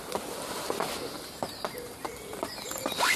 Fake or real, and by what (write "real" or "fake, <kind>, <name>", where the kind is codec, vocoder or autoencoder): real